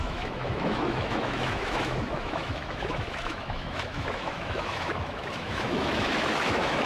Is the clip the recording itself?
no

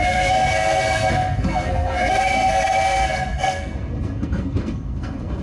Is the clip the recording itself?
no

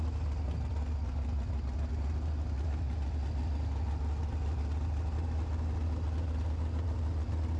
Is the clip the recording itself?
yes